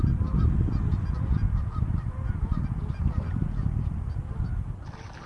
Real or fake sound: real